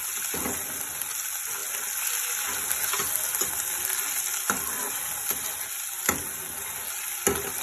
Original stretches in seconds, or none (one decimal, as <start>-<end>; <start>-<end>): 0.0-7.6

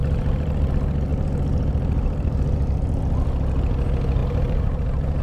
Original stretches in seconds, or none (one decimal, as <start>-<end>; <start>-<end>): 0.7-1.1; 3.0-4.2

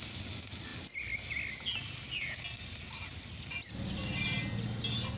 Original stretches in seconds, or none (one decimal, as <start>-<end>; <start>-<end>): 0.0-5.2

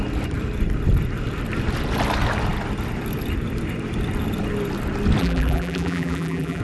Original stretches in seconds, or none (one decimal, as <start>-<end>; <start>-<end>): 0.0-5.2